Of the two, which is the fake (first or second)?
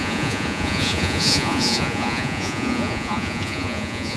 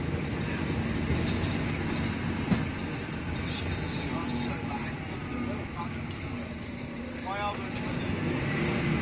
first